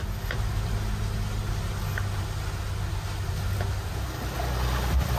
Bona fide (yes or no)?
yes